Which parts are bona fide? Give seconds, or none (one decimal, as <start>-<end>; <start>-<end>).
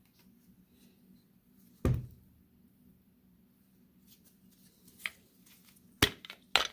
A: 0.0-6.7